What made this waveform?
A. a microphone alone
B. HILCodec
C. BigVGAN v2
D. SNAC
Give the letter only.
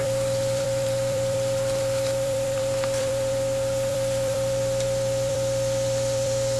C